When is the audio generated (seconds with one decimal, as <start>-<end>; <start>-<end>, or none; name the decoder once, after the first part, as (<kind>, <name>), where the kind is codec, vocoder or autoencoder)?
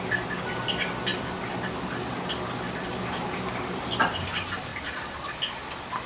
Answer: 1.1-1.7 (vocoder, BigVGAN v2)